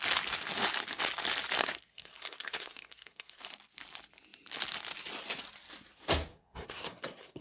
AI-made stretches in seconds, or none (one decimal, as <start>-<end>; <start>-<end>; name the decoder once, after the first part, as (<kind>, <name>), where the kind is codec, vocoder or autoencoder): 1.6-3.4 (codec, SNAC); 6.3-7.4